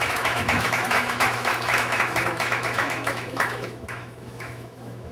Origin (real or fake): fake